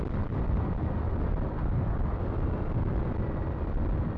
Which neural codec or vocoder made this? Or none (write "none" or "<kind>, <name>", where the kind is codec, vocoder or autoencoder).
none